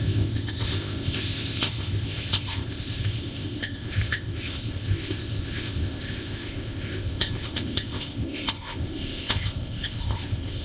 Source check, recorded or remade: remade